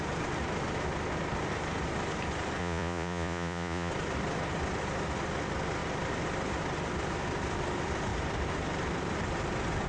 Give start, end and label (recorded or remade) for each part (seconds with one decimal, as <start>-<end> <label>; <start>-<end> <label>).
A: 0.0-2.6 recorded; 2.6-3.9 remade; 3.9-9.9 recorded